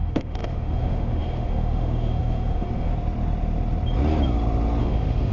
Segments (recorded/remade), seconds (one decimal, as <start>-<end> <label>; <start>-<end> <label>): 0.0-2.9 remade; 2.9-4.8 recorded; 4.8-5.3 remade